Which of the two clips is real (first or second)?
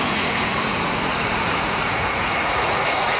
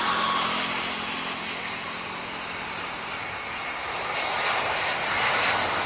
second